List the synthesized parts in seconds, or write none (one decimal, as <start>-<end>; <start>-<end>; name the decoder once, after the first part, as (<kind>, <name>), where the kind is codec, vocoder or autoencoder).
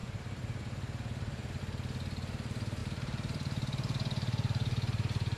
0.0-1.6 (vocoder, BigVGAN v2); 2.8-5.4